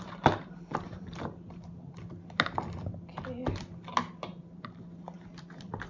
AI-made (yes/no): no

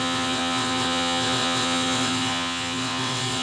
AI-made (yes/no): yes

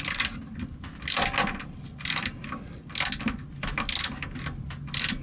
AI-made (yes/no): no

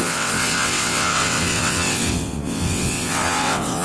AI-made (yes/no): yes